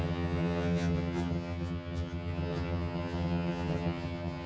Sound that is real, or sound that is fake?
fake